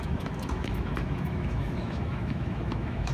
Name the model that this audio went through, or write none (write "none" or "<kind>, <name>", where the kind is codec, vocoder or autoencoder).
autoencoder, DAC-VAE